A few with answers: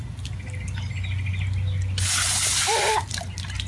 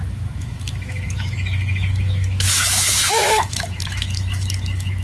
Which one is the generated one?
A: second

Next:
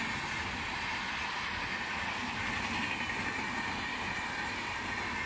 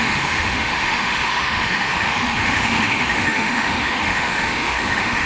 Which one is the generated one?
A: second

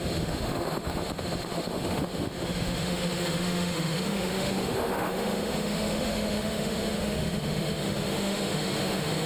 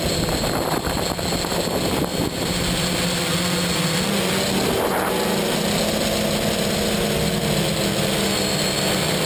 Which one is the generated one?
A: first